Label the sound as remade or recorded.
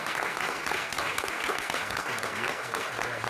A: remade